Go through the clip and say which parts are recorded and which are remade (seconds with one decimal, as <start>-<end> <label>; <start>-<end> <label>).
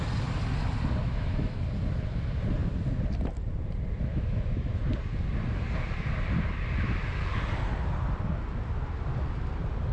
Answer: 0.0-1.0 recorded; 1.0-1.6 remade; 1.6-4.1 recorded; 4.1-4.8 remade; 4.8-9.9 recorded